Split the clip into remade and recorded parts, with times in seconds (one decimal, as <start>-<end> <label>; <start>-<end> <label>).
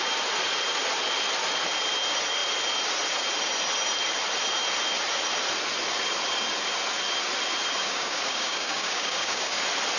0.0-7.8 recorded; 7.8-9.6 remade; 9.6-10.0 recorded